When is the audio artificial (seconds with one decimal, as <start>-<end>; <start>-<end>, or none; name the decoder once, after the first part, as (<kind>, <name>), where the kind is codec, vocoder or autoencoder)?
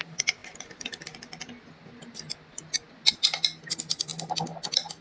none